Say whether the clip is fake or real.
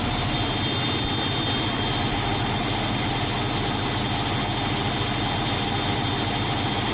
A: real